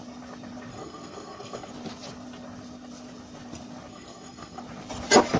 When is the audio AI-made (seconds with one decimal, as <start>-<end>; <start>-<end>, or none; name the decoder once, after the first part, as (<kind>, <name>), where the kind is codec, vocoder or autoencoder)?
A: 0.7-1.7 (codec, SNAC); 3.9-4.6